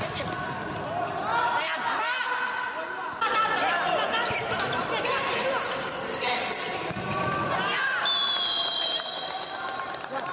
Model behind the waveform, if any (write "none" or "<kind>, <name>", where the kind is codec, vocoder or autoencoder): none